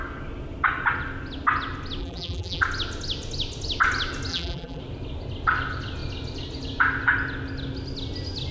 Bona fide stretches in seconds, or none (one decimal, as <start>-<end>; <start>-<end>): 0.0-2.0; 2.6-4.3; 4.8-8.5